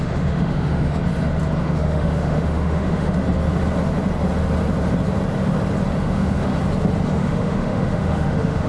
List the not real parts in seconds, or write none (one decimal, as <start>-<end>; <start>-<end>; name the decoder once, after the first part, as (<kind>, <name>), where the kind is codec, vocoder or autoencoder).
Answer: 0.0-1.0 (autoencoder, DAC-VAE); 1.6-3.2; 6.0-6.5; 7.1-8.7